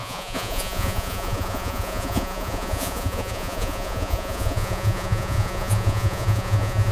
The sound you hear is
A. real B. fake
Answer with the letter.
B